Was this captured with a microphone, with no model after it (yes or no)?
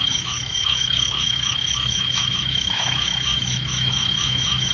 no